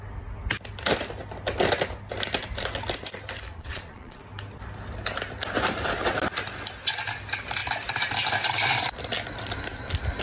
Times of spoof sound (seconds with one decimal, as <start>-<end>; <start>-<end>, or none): 3.5-4.2